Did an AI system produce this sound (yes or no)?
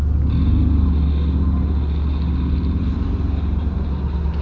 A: no